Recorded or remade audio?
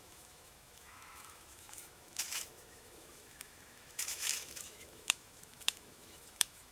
remade